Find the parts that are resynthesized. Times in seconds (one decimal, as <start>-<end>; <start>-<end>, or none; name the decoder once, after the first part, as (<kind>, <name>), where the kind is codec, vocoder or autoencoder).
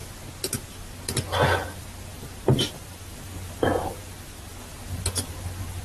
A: 2.1-5.3 (vocoder, BigVGAN v2)